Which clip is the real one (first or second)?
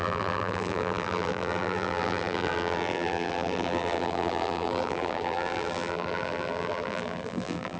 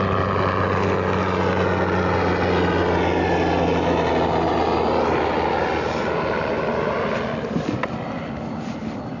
second